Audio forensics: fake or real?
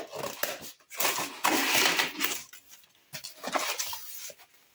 real